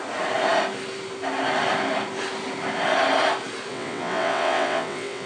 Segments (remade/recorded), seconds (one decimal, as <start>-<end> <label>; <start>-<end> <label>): 0.0-3.7 recorded; 3.7-5.3 remade